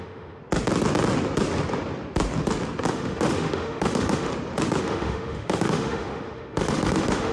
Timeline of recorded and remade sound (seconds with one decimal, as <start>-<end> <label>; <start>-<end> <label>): 0.0-0.4 remade; 0.4-2.9 recorded; 2.9-4.3 remade; 4.3-4.8 recorded; 4.8-7.3 remade